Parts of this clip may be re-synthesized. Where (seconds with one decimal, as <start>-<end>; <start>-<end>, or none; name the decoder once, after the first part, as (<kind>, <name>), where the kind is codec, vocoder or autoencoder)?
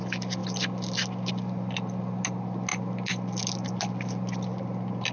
none